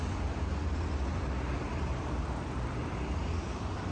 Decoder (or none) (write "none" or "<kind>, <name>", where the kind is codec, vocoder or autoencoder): vocoder, BigVGAN v2